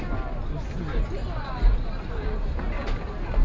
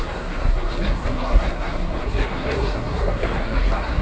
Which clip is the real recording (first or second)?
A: first